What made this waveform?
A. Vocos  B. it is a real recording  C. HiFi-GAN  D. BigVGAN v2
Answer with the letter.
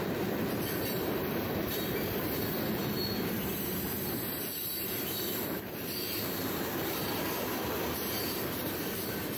D